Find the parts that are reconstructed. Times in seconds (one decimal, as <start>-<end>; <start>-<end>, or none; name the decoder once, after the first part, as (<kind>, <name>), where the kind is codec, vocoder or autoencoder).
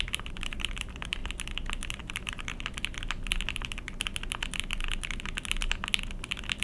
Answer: 0.0-1.2 (vocoder, BigVGAN v2); 2.1-2.5